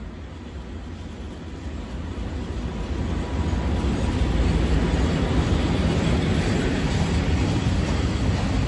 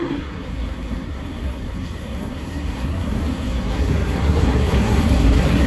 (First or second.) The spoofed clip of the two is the second